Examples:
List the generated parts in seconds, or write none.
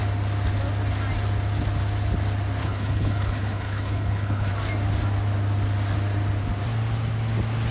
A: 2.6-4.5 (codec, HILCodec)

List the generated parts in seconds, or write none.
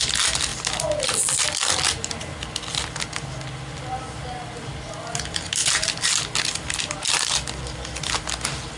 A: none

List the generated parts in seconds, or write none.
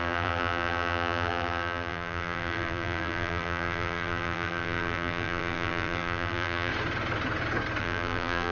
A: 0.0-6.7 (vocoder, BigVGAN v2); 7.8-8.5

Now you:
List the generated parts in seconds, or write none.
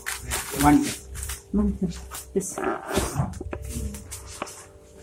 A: 0.8-1.6 (vocoder, BigVGAN v2); 2.7-4.0